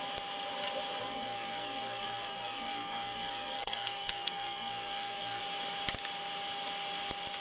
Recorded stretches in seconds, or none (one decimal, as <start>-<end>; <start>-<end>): 0.0-1.0; 5.4-7.4